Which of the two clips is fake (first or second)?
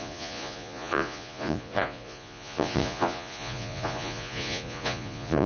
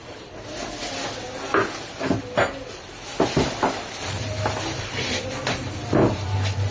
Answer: first